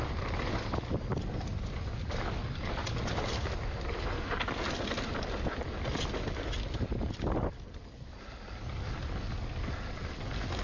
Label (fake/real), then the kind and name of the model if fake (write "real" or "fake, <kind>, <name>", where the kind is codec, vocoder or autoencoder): real